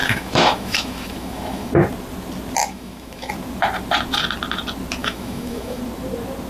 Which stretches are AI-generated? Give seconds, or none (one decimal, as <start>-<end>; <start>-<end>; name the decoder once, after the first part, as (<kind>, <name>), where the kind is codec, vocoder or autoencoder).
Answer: 0.0-1.7 (autoencoder, DAC-VAE); 2.6-3.3; 5.0-5.8